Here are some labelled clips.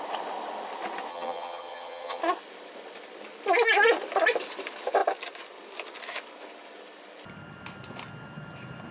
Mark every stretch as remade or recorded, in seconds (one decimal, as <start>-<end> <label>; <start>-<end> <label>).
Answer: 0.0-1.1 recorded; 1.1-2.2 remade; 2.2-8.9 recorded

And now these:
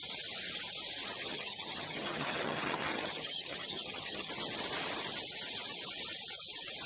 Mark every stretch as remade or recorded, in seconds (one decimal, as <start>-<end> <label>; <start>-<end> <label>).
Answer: 0.0-1.2 recorded; 1.2-4.3 remade; 4.3-6.9 recorded

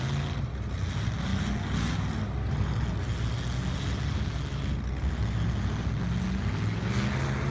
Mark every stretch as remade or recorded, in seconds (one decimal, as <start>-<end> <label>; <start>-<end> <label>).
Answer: 0.0-7.5 recorded

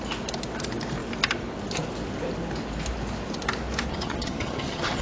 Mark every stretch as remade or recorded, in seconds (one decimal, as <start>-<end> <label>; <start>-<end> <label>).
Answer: 0.0-3.9 recorded; 3.9-5.0 remade

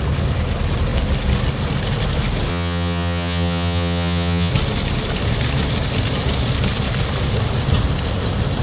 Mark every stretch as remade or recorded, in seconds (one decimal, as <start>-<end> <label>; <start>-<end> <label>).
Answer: 0.0-2.5 recorded; 2.5-4.5 remade; 4.5-8.6 recorded